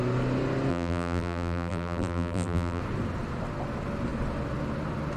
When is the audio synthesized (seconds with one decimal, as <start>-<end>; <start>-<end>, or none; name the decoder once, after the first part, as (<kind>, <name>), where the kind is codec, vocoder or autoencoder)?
0.7-2.8 (vocoder, BigVGAN v2)